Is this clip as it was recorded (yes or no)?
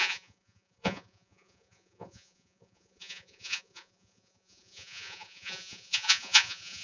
no